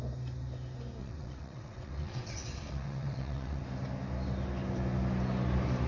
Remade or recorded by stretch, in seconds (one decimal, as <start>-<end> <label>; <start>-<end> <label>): 0.0-1.0 recorded; 1.0-3.6 remade; 3.6-5.9 recorded